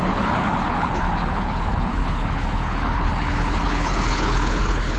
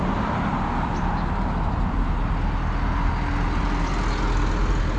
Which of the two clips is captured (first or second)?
second